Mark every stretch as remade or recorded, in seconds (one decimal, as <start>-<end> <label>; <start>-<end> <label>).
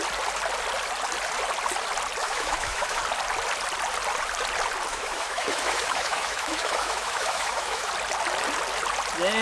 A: 0.0-2.2 recorded; 2.2-3.0 remade; 3.0-4.9 recorded; 4.9-7.9 remade; 7.9-9.4 recorded